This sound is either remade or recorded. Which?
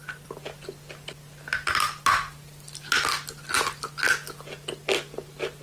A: recorded